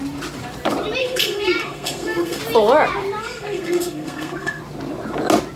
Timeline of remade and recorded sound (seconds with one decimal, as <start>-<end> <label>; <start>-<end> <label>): 0.0-1.0 recorded; 1.0-2.4 remade; 2.4-3.2 recorded; 3.2-4.6 remade; 4.6-5.6 recorded